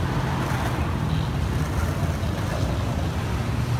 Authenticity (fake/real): real